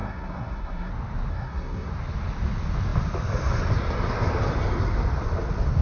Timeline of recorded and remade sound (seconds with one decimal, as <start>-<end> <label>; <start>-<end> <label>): 0.0-0.9 remade; 0.9-1.3 recorded; 1.3-1.9 remade; 1.9-5.8 recorded